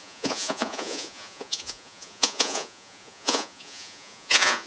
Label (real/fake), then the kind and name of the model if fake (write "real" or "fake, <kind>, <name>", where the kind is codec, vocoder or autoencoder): fake, vocoder, Vocos